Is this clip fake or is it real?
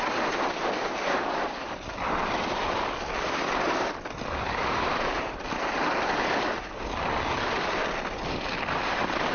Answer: fake